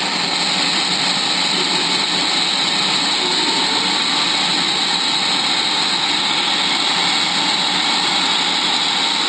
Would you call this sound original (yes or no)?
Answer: yes